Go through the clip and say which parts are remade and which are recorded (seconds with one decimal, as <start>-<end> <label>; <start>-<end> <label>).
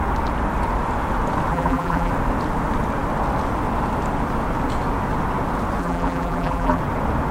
0.0-1.5 recorded; 1.5-2.1 remade; 2.1-5.8 recorded; 5.8-6.8 remade; 6.8-7.3 recorded